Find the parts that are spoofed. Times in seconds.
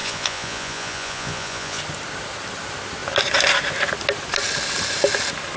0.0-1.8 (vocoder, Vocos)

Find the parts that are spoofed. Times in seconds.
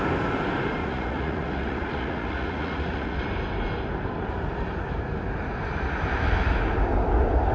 0.8-3.2 (vocoder, Vocos)